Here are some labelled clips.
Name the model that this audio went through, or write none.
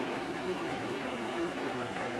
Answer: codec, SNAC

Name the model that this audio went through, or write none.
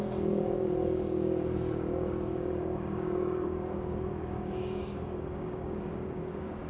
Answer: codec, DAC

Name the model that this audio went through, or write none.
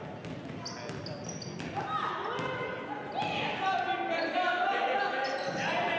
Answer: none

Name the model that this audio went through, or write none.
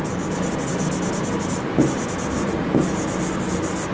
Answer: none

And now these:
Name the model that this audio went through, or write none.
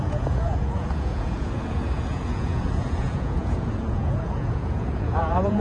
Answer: vocoder, Vocos